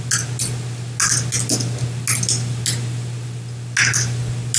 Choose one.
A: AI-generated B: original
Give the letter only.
B